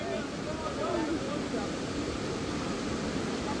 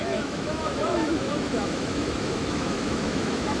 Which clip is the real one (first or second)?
first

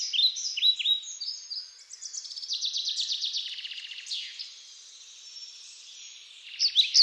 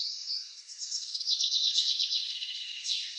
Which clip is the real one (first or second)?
first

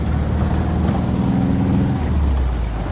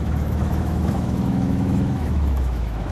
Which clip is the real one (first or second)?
first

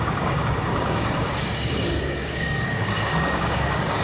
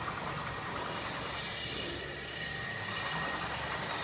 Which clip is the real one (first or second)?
second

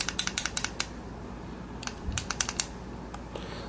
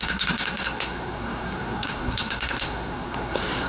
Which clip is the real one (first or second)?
first